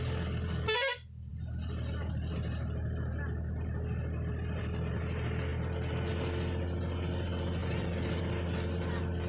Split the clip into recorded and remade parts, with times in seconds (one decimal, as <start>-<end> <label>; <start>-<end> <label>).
0.0-7.6 recorded; 7.6-8.2 remade; 8.2-9.3 recorded